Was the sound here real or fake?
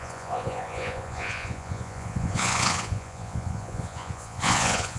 fake